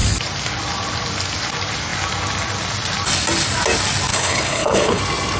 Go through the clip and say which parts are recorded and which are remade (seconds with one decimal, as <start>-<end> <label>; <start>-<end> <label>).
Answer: 0.0-4.1 recorded; 4.1-5.0 remade; 5.0-5.4 recorded